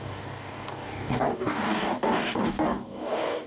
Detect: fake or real fake